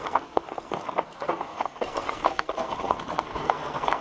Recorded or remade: remade